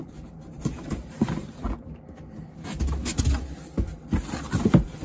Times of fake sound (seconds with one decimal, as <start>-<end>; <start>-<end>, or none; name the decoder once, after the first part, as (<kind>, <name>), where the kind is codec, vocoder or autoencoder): 0.0-1.6 (vocoder, BigVGAN v2); 4.4-5.0